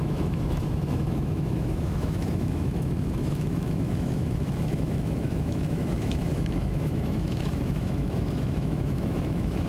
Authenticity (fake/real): fake